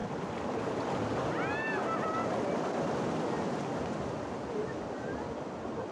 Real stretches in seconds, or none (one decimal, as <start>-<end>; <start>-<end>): 0.0-5.9